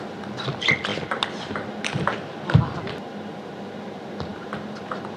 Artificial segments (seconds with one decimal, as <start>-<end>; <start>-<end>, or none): none